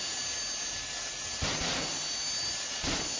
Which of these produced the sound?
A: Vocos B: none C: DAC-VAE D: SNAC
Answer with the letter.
B